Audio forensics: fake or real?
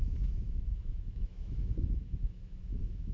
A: fake